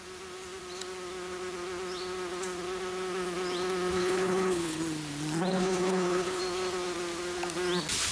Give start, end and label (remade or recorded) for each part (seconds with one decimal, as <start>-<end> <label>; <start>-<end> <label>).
0.0-3.9 recorded; 3.9-4.8 remade; 4.8-5.5 recorded; 5.5-6.4 remade; 6.4-8.1 recorded